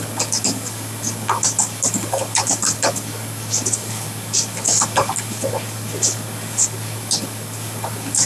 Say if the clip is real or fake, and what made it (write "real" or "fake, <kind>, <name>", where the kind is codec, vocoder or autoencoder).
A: fake, codec, DAC